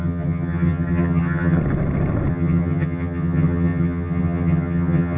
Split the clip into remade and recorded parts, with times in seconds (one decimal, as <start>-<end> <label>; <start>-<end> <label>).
0.0-1.6 remade; 1.6-2.3 recorded; 2.3-5.2 remade